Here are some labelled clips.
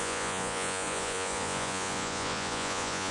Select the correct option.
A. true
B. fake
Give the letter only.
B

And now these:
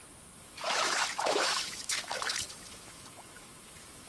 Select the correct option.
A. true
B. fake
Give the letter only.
B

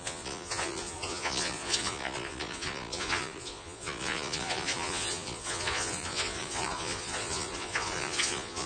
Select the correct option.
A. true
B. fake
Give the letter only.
B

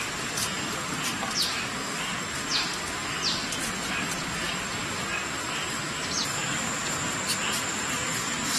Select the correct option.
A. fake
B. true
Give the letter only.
B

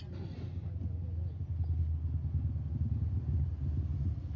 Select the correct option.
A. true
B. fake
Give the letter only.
A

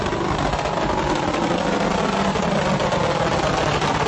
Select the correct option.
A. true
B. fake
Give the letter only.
A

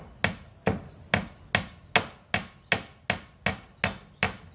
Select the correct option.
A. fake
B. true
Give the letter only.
B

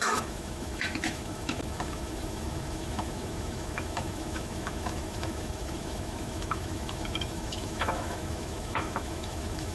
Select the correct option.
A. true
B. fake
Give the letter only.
B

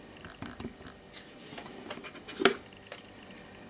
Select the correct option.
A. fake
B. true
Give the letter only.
A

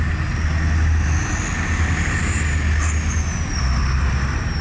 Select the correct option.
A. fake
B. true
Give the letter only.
B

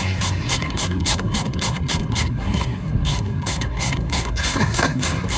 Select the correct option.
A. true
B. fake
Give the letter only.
B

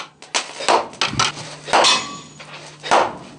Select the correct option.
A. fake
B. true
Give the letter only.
B